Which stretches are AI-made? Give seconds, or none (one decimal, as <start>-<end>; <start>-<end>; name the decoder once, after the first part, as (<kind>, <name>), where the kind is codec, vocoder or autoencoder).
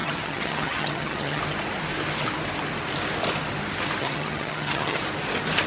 0.0-1.4 (vocoder, HiFi-GAN); 4.0-5.0